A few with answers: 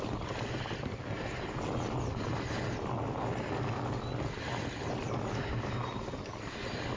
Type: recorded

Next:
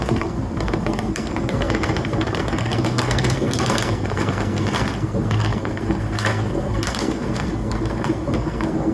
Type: remade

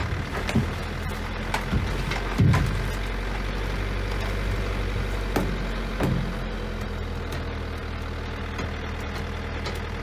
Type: recorded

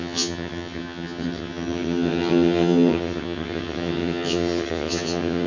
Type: remade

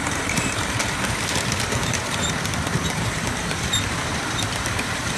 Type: remade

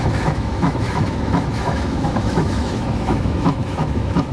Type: remade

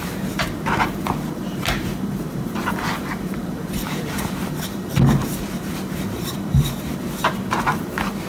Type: remade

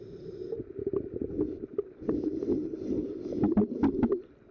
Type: recorded